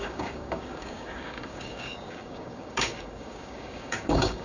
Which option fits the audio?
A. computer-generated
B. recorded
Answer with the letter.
A